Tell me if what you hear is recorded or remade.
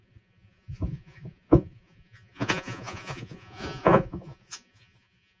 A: remade